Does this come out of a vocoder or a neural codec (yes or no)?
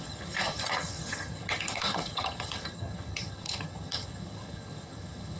yes